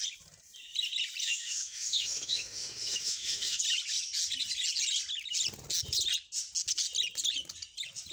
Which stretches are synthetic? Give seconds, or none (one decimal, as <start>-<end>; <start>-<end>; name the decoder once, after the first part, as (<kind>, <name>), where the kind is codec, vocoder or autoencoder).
1.2-3.6 (autoencoder, DAC-VAE)